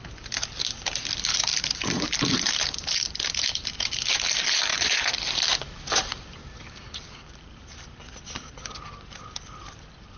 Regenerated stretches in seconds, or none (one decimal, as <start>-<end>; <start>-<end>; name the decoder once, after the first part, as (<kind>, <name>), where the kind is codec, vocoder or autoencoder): 1.5-3.8 (vocoder, BigVGAN v2); 4.7-8.0